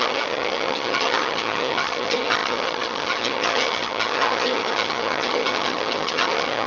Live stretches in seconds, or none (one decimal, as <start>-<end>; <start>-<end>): none